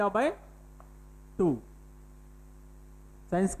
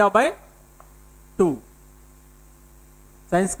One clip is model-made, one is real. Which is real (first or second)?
first